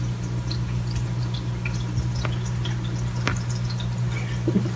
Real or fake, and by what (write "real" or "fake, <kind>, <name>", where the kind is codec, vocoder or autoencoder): real